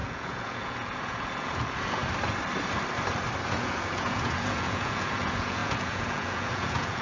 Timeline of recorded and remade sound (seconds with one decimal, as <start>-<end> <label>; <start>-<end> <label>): 0.0-2.0 remade; 2.0-3.4 recorded; 3.4-7.0 remade